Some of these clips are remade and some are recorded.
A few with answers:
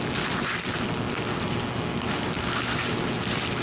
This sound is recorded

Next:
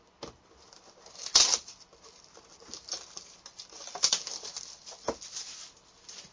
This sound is recorded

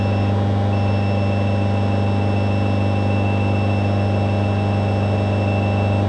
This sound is recorded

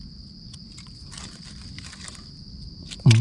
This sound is remade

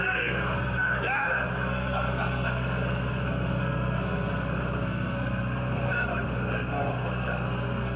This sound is remade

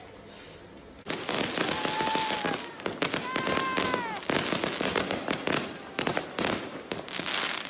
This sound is recorded